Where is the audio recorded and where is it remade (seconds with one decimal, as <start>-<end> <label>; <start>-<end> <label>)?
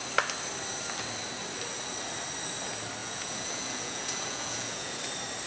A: 0.0-3.0 recorded; 3.0-5.0 remade; 5.0-5.5 recorded